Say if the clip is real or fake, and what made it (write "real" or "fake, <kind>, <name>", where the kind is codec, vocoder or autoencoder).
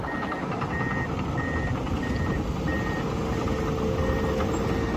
real